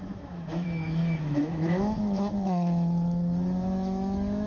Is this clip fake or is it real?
fake